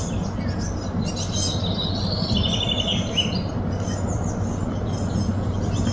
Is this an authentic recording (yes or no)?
yes